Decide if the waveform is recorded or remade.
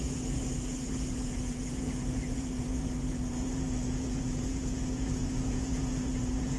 remade